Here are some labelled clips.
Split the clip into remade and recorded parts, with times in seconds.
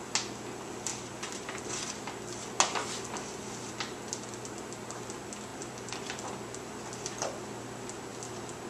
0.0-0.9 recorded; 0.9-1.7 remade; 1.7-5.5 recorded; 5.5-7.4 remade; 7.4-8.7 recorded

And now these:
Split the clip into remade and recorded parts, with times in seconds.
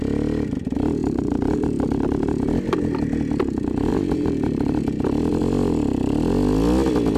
0.0-1.0 recorded; 1.0-2.4 remade; 2.4-3.9 recorded; 3.9-4.8 remade; 4.8-7.2 recorded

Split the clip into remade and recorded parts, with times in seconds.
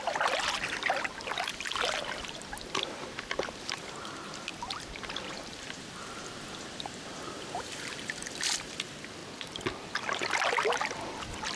0.0-9.2 remade; 9.2-9.9 recorded; 9.9-11.6 remade